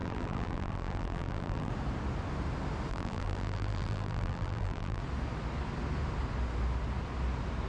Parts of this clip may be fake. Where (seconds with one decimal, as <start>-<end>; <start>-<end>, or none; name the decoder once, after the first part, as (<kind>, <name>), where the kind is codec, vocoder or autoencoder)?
0.0-1.7 (vocoder, BigVGAN v2); 2.9-5.0